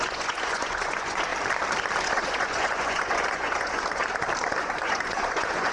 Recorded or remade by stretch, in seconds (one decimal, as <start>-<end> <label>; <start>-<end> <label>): 0.0-1.3 remade; 1.3-2.0 recorded; 2.0-4.0 remade; 4.0-4.6 recorded; 4.6-5.7 remade